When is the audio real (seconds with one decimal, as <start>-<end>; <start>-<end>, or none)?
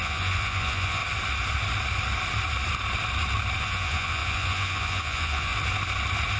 1.0-3.6; 5.5-6.4